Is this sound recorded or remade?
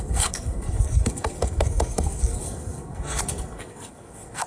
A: remade